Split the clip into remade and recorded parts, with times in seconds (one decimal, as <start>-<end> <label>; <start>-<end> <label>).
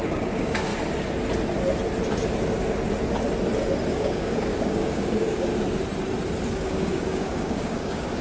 0.0-0.7 remade; 0.7-3.9 recorded; 3.9-5.5 remade; 5.5-6.5 recorded; 6.5-8.2 remade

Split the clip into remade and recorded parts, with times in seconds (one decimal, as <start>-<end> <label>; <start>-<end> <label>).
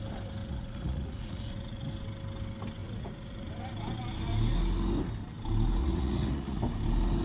0.0-0.4 recorded; 0.4-1.8 remade; 1.8-2.8 recorded; 2.8-3.5 remade; 3.5-5.8 recorded; 5.8-6.6 remade; 6.6-7.2 recorded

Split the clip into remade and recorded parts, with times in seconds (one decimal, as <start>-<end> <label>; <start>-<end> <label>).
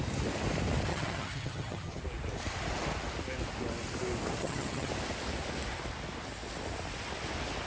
0.0-0.9 recorded; 0.9-2.0 remade; 2.0-4.4 recorded; 4.4-4.9 remade; 4.9-7.7 recorded